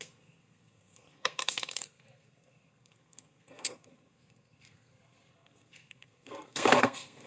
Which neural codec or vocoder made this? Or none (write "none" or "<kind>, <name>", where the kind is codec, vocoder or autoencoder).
codec, SNAC